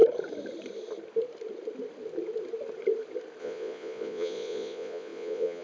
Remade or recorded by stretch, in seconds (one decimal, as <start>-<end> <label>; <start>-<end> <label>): 0.0-3.4 recorded; 3.4-5.6 remade